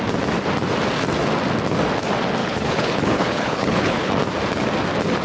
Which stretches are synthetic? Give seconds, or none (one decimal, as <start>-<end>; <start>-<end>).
2.4-4.1